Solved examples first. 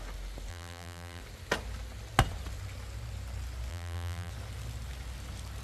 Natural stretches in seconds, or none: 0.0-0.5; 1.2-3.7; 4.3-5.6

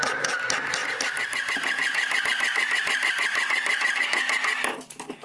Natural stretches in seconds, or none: 0.0-0.8; 2.2-5.2

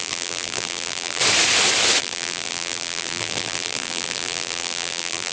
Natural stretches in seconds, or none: 1.2-2.0

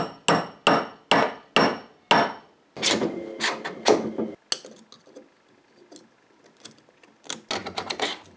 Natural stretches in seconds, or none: 0.0-7.6